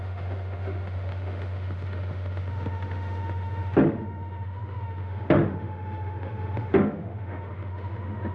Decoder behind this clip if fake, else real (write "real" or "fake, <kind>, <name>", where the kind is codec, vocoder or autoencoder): fake, autoencoder, DAC-VAE